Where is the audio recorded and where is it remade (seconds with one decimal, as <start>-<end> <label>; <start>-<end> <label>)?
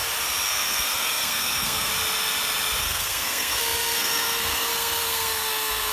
0.0-0.5 recorded; 0.5-1.9 remade; 1.9-2.8 recorded; 2.8-5.9 remade